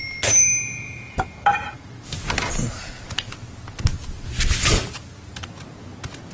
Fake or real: real